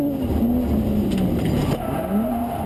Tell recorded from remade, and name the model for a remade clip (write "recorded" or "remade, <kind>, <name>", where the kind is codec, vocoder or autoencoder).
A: recorded